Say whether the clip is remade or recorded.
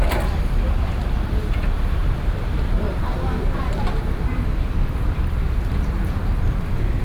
remade